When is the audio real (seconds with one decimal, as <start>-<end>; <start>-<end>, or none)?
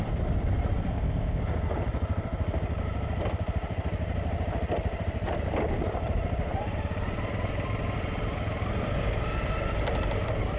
0.0-0.9; 1.4-10.6